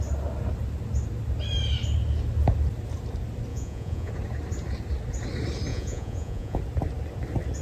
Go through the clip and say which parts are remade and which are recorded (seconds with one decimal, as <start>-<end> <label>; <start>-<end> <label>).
0.0-3.5 recorded; 3.5-4.1 remade; 4.1-5.7 recorded; 5.7-6.6 remade; 6.6-7.6 recorded